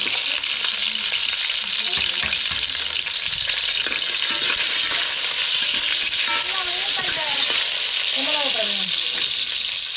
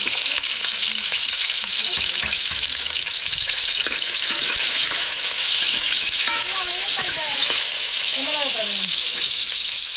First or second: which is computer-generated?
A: second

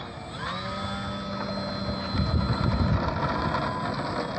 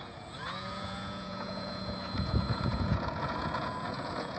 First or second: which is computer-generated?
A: second